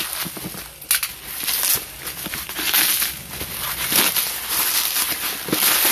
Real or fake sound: real